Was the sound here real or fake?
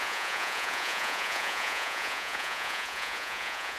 fake